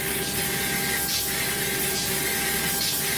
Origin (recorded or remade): recorded